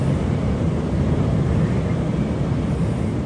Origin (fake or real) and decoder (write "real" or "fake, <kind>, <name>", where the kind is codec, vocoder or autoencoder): real